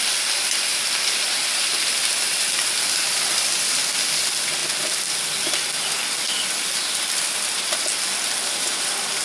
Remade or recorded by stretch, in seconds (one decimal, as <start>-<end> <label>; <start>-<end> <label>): 0.0-0.7 recorded; 0.7-3.8 remade; 3.8-9.2 recorded